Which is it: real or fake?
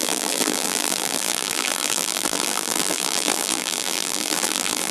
fake